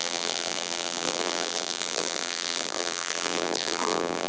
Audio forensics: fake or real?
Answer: fake